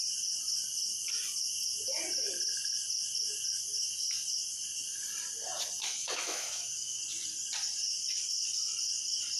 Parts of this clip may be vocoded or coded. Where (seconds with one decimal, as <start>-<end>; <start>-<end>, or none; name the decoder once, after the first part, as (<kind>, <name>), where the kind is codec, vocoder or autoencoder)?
6.0-7.0 (autoencoder, DAC-VAE)